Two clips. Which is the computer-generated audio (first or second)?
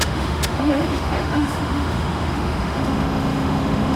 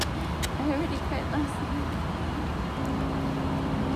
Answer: first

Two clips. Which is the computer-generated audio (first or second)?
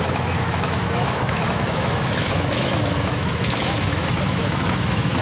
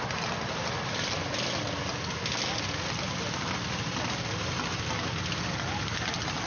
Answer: first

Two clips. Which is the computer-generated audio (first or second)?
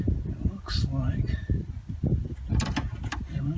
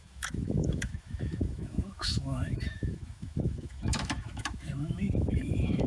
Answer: second